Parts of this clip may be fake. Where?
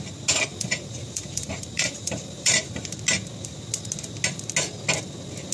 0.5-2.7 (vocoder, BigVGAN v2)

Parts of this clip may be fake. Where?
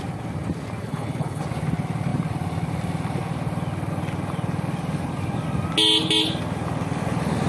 0.8-1.4 (codec, HILCodec)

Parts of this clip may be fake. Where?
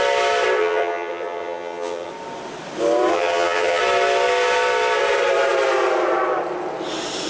0.6-2.1 (vocoder, HiFi-GAN); 3.1-3.8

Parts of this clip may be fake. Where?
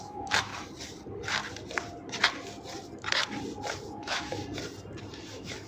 0.0-0.5 (autoencoder, DAC-VAE); 3.9-4.4; 5.3-5.7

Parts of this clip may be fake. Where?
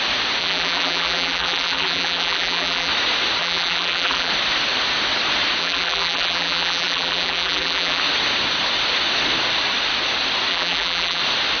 0.4-2.9 (vocoder, BigVGAN v2); 3.4-4.3; 5.6-8.0; 10.5-11.2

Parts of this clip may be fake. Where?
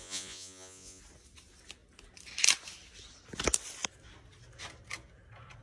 0.0-1.0 (vocoder, Vocos)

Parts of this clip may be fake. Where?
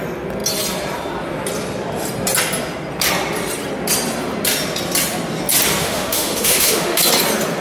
5.8-7.0 (autoencoder, DAC-VAE)